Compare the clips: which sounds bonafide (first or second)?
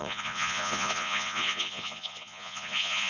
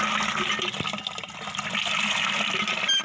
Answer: second